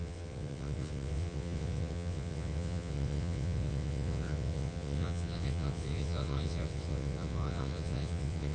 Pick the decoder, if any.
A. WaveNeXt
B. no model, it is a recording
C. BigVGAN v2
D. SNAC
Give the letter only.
A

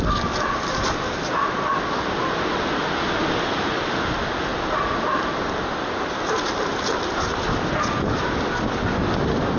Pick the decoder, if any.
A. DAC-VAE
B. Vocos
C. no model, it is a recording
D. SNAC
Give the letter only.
C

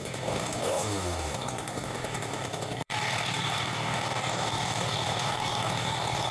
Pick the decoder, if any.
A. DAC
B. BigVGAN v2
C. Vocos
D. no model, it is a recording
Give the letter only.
A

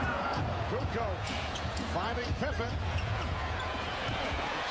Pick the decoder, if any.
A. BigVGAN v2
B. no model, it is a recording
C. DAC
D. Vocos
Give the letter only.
D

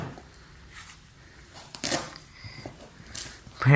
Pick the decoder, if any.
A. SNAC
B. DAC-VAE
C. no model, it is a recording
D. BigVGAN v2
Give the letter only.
D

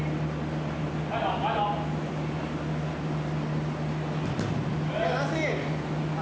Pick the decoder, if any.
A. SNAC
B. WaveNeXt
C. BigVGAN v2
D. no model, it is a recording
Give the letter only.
D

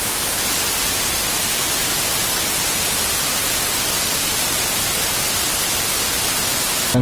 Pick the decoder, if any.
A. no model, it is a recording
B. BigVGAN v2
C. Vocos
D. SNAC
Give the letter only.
A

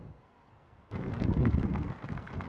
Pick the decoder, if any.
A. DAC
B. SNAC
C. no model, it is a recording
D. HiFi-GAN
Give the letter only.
B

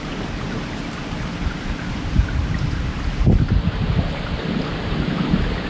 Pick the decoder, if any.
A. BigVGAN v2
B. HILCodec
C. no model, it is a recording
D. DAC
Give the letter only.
C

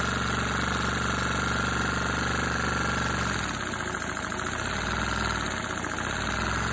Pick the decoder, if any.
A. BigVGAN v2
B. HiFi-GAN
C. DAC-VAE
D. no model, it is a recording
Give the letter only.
D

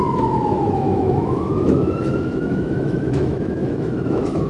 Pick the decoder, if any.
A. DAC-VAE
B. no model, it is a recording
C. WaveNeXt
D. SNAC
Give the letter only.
A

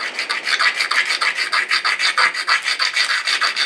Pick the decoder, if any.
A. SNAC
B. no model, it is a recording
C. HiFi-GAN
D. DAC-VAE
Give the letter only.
B